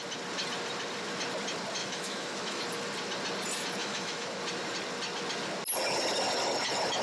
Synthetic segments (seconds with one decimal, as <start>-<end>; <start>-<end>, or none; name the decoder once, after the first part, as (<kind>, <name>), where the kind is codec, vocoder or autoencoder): 1.8-2.6 (autoencoder, DAC-VAE); 3.8-4.4